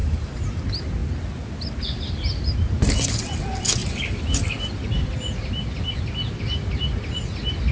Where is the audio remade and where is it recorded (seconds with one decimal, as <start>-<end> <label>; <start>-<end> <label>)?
0.0-0.6 remade; 0.6-7.7 recorded